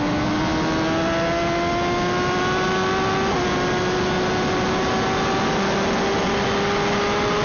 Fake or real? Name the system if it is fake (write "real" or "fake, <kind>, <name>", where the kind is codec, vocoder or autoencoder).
real